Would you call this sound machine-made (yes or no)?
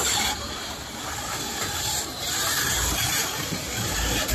yes